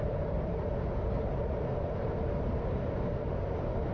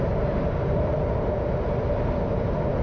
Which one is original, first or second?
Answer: second